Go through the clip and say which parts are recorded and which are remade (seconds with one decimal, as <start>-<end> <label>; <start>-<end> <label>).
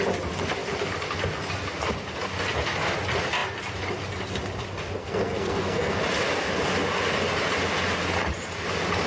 0.0-5.0 recorded; 5.0-6.0 remade; 6.0-9.1 recorded